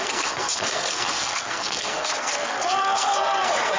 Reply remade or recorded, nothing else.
remade